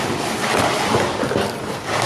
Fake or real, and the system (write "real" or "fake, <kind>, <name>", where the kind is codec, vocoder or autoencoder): real